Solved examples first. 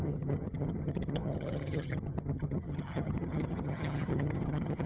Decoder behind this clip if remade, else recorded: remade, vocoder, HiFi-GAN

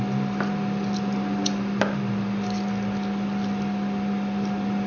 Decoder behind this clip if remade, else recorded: recorded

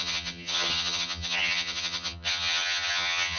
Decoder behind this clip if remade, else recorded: remade, vocoder, HiFi-GAN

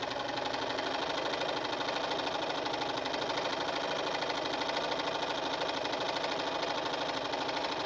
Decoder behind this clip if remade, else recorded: recorded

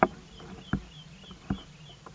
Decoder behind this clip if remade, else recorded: recorded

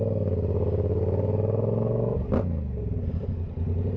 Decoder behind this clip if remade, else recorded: recorded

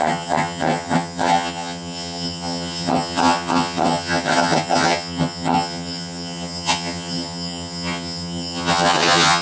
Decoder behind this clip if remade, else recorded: remade, vocoder, HiFi-GAN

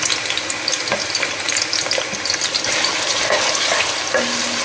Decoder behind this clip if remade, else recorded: recorded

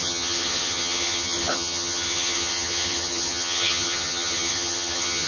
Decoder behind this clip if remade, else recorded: remade, vocoder, HiFi-GAN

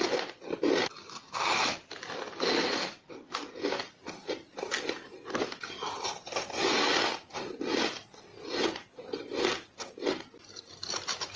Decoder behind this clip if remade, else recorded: recorded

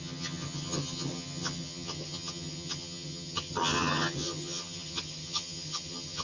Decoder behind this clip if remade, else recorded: remade, vocoder, HiFi-GAN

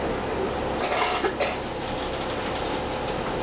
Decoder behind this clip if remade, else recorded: recorded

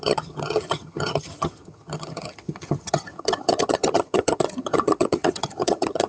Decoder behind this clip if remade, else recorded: remade, vocoder, HiFi-GAN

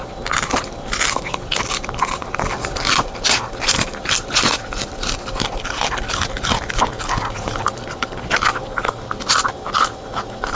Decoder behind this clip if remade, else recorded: recorded